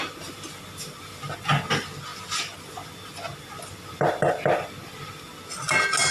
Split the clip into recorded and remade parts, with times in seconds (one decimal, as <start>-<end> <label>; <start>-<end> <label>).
0.0-6.1 recorded